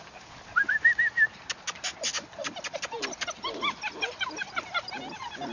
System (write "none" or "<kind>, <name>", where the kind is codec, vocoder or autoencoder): none